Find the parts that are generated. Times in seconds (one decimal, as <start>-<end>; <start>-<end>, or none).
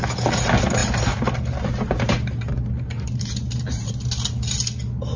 0.8-3.9